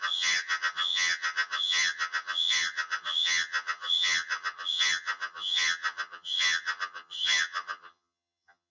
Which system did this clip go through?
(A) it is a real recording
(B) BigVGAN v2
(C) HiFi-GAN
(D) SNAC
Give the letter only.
C